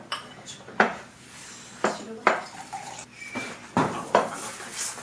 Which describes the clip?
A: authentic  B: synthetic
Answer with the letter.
B